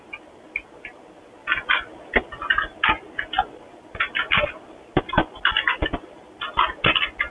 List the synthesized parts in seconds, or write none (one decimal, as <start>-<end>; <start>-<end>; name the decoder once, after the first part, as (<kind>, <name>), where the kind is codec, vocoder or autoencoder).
none